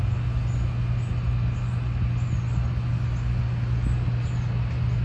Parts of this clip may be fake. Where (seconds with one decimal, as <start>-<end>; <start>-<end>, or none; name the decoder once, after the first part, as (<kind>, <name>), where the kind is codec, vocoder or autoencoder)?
none